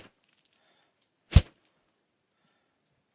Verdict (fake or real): real